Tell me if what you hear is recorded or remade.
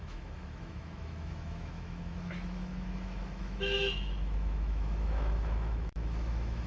remade